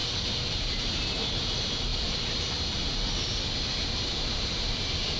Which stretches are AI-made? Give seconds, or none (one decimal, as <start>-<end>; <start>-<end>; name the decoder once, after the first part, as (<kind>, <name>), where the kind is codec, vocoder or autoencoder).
1.9-2.4 (vocoder, BigVGAN v2); 4.1-5.2